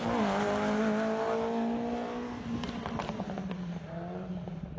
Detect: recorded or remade recorded